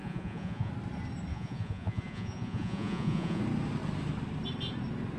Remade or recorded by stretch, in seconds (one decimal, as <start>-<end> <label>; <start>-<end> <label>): 0.0-0.7 remade; 0.7-1.3 recorded; 1.3-3.4 remade; 3.4-5.2 recorded